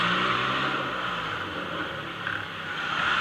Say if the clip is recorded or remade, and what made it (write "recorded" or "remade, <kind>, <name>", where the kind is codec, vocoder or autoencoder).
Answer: remade, vocoder, BigVGAN v2